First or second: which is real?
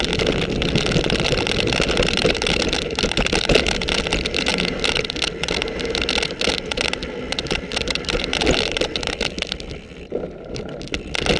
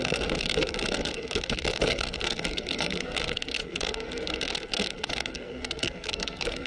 first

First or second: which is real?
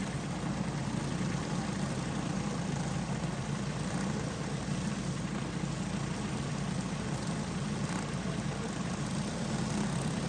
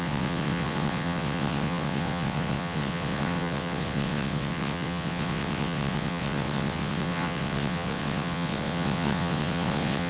first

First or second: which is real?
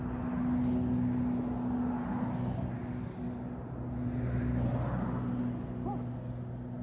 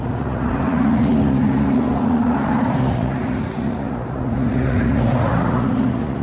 first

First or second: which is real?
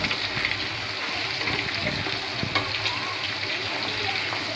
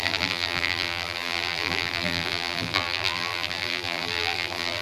first